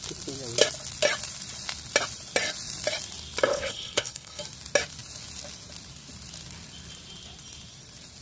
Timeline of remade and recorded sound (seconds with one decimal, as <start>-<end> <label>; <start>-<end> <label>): 0.0-3.5 recorded; 3.5-4.4 remade; 4.4-8.2 recorded